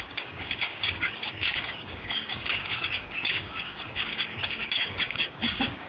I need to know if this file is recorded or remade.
remade